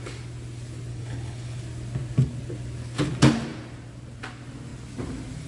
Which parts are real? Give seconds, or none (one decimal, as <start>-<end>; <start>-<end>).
0.0-0.9; 1.6-5.5